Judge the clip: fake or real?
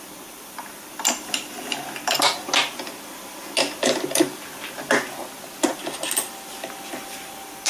real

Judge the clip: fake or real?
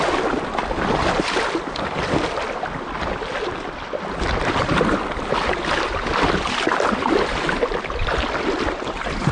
real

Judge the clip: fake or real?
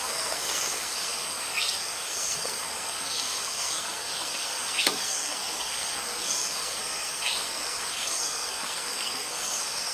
fake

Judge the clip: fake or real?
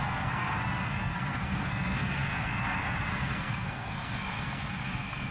fake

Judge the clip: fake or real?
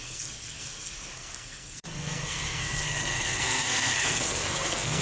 fake